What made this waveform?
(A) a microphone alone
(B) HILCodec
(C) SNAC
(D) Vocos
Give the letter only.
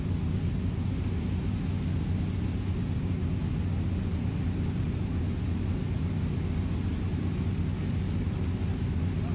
A